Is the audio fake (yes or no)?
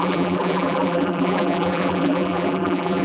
yes